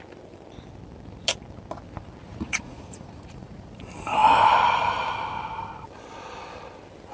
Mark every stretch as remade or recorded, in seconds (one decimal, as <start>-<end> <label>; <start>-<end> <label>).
0.0-2.3 recorded; 2.3-3.8 remade; 3.8-7.1 recorded